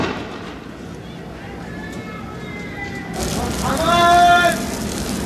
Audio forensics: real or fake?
real